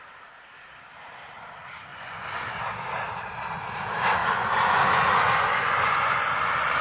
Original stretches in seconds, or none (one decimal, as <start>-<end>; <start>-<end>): 0.0-1.9; 2.6-4.2